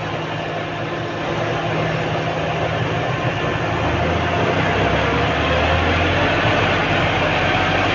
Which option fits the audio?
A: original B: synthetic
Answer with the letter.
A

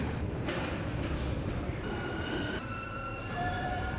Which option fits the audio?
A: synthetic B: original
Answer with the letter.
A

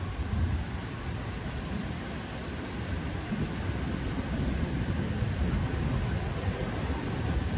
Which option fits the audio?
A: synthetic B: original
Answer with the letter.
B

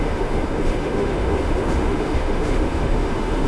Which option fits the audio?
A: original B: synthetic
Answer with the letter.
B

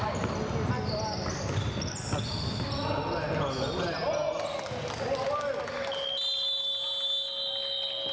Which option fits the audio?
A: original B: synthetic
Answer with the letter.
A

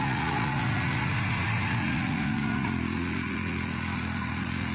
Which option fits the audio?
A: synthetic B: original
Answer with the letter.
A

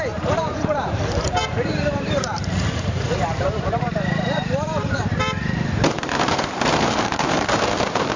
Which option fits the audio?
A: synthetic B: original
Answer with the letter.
A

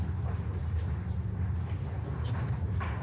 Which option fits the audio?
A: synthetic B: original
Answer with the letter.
B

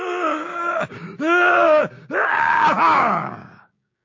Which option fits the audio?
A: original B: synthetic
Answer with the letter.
B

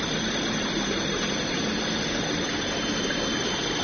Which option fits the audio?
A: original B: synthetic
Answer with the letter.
A